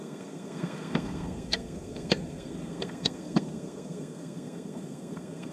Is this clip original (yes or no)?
no